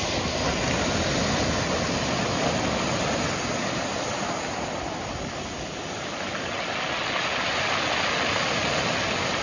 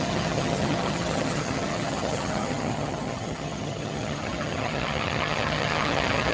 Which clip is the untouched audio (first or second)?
first